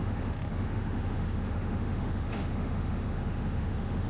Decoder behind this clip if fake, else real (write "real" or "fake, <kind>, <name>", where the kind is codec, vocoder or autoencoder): fake, autoencoder, DAC-VAE